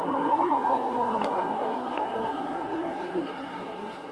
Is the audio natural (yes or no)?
no